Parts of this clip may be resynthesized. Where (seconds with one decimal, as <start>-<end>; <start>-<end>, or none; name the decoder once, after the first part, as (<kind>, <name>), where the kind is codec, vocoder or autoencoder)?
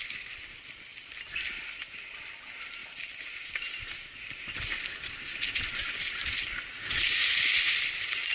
none